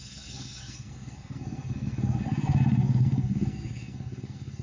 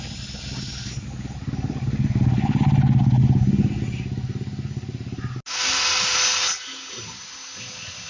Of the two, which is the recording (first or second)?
second